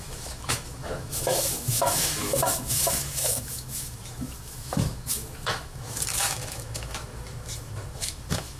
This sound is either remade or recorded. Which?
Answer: remade